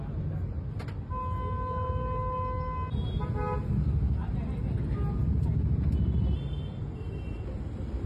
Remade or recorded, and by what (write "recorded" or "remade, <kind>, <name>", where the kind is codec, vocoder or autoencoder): recorded